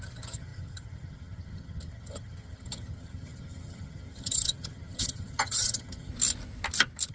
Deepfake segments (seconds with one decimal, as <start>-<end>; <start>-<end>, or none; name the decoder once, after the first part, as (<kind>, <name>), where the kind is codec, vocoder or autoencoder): 0.0-6.1 (vocoder, HiFi-GAN)